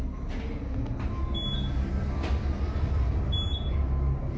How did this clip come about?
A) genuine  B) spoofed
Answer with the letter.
A